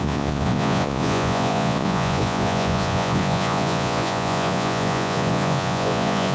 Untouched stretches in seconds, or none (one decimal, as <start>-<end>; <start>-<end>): none